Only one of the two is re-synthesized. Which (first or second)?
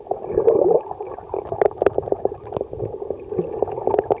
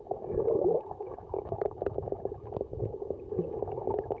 second